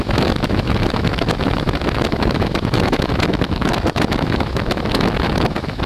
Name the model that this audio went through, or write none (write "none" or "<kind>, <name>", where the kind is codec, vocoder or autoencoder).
autoencoder, DAC-VAE